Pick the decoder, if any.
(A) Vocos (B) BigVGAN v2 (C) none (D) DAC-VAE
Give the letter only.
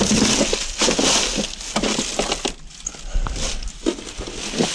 C